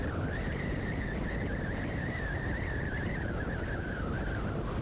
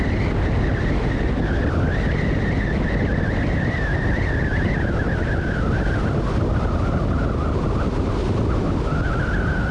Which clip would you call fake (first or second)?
first